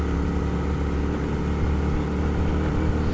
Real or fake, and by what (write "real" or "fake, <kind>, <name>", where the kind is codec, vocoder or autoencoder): fake, vocoder, BigVGAN v2